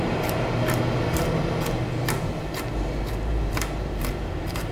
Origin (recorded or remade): remade